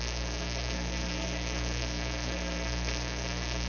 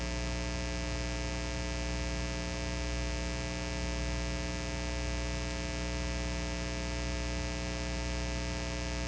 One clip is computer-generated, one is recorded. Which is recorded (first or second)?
second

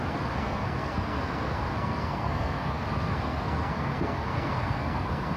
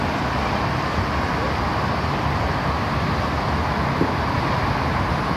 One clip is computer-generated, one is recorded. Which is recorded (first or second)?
second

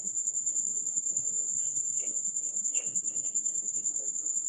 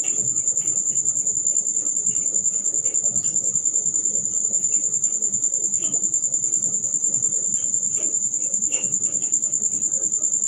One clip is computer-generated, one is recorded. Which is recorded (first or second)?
second